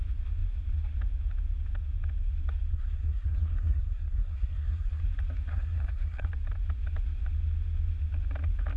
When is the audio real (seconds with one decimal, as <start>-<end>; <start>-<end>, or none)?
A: 0.0-2.7; 5.0-5.5; 6.3-8.8